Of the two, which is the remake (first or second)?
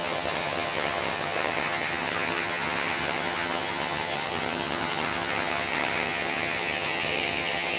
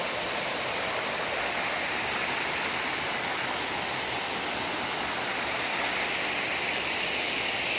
first